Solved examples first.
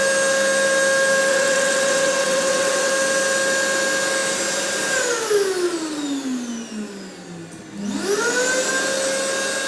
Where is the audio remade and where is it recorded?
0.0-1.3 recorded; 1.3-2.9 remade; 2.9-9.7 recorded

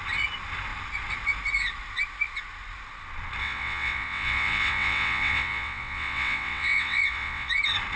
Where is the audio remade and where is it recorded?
0.0-3.4 recorded; 3.4-7.5 remade; 7.5-8.0 recorded

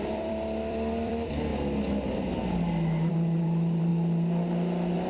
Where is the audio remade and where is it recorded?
0.0-1.5 remade; 1.5-3.1 recorded; 3.1-3.9 remade; 3.9-5.1 recorded

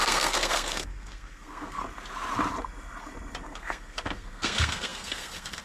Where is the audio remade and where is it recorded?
0.0-1.8 remade; 1.8-3.4 recorded; 3.4-5.6 remade

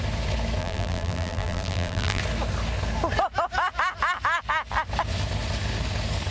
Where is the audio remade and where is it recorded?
0.0-0.6 recorded; 0.6-2.2 remade; 2.2-6.3 recorded

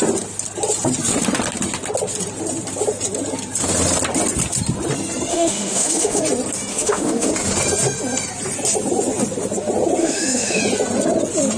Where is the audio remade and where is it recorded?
0.0-5.3 recorded; 5.3-6.2 remade; 6.2-6.7 recorded; 6.7-7.3 remade; 7.3-10.0 recorded; 10.0-10.6 remade; 10.6-11.6 recorded

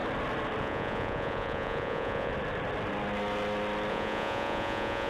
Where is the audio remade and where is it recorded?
0.0-0.6 recorded; 0.6-2.3 remade; 2.3-3.9 recorded; 3.9-5.1 remade

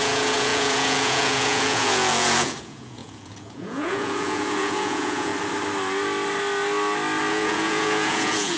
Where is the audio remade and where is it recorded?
0.0-5.3 remade; 5.3-7.3 recorded; 7.3-8.6 remade